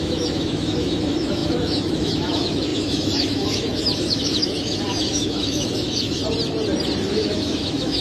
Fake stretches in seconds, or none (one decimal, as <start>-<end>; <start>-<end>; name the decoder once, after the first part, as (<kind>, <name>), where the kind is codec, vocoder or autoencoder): 0.0-6.2 (autoencoder, DAC-VAE); 7.1-8.0